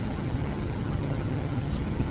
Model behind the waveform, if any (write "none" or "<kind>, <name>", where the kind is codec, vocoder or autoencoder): vocoder, HiFi-GAN